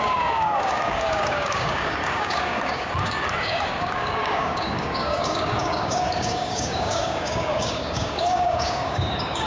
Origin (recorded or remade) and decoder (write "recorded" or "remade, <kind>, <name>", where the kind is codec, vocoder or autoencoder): remade, codec, DAC